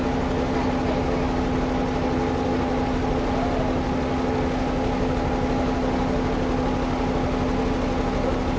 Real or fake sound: real